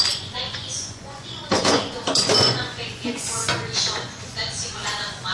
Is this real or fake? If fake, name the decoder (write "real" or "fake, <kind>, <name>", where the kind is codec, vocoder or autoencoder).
fake, vocoder, Vocos